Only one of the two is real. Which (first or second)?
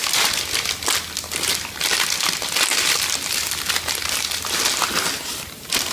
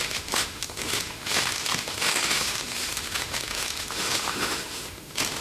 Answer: first